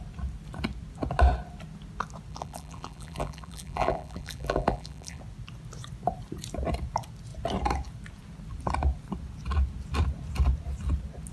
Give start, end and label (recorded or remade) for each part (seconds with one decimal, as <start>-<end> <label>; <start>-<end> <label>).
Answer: 0.0-2.3 recorded; 2.3-5.2 remade; 5.2-11.3 recorded